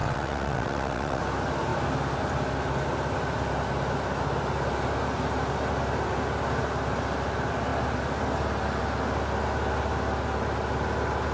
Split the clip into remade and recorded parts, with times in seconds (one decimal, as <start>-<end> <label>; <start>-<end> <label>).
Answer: 0.0-1.2 remade; 1.2-11.3 recorded